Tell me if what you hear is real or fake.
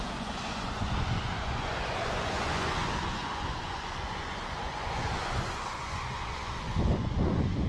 fake